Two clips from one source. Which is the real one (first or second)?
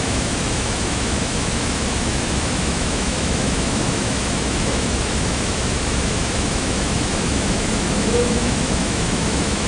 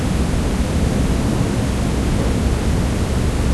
second